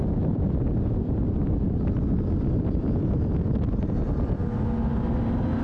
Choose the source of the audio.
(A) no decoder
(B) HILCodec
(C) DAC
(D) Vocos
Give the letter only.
A